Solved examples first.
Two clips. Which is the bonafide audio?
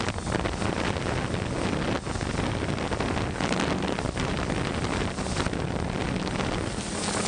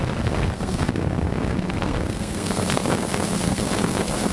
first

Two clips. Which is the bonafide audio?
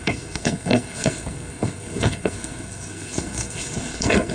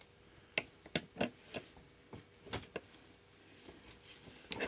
second